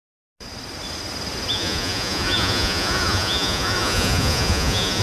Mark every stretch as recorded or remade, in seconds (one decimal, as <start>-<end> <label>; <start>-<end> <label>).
0.0-1.5 recorded; 1.5-5.0 remade